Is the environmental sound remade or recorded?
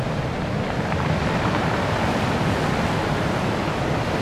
recorded